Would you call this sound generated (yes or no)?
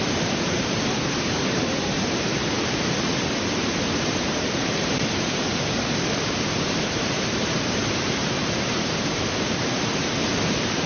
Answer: yes